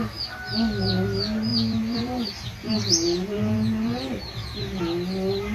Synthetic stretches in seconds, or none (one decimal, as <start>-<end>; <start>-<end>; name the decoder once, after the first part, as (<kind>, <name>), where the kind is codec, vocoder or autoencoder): 1.5-4.8 (vocoder, BigVGAN v2)